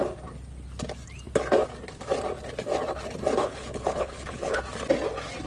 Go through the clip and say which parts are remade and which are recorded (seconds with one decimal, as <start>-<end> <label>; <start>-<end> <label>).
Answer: 0.0-3.4 recorded; 3.4-4.6 remade; 4.6-5.5 recorded